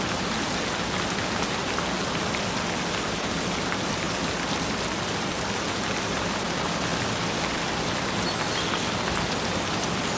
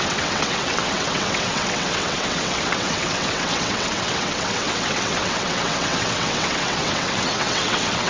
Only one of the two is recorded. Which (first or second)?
first